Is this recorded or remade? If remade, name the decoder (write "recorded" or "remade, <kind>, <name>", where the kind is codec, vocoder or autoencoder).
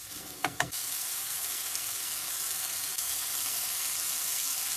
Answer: remade, codec, SNAC